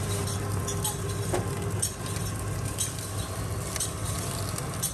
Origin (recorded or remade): recorded